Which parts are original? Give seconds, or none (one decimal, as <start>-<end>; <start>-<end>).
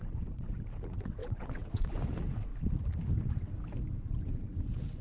2.5-3.2; 3.6-4.2